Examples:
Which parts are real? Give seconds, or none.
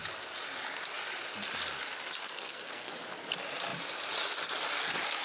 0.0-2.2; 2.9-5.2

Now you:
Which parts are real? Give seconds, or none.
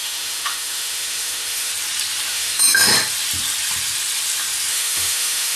1.7-2.3; 2.9-4.7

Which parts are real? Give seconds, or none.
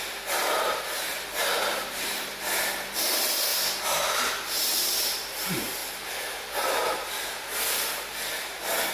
none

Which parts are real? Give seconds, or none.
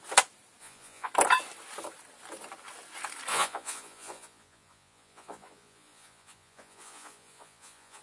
0.0-0.6; 1.1-3.3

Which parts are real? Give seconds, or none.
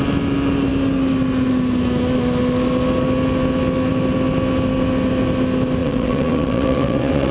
0.0-5.8